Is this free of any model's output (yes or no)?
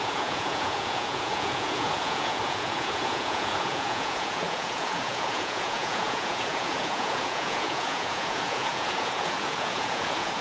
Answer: no